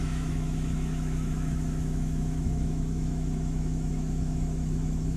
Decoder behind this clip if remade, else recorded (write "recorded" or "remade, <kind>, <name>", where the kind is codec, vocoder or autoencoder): remade, autoencoder, DAC-VAE